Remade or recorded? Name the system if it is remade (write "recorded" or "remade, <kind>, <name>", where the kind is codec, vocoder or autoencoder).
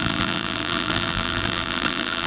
remade, vocoder, BigVGAN v2